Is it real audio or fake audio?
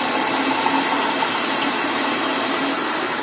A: fake